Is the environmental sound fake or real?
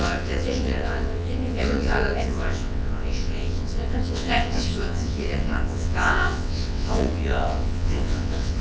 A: fake